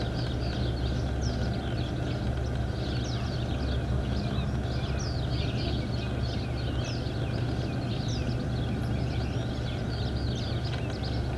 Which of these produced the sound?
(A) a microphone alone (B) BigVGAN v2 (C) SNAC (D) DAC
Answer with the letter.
A